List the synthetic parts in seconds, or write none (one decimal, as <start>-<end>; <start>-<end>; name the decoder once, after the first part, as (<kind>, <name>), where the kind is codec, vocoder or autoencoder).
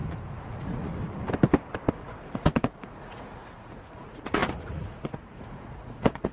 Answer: 0.5-0.9 (vocoder, Vocos); 1.9-6.3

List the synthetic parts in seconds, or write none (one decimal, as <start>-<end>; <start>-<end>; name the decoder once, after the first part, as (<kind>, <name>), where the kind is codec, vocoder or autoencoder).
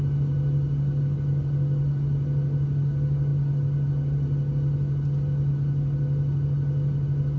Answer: none